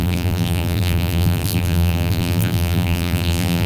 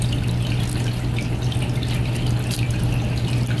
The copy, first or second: first